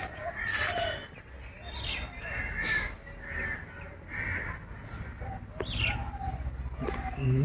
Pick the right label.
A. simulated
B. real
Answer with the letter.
B